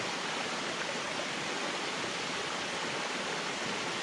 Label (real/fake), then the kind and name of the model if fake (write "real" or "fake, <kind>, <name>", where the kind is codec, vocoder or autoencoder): real